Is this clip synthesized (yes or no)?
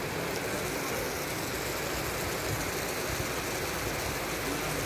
no